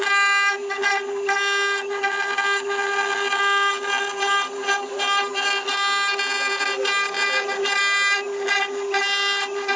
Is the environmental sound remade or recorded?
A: recorded